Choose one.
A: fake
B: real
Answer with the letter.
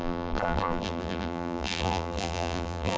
A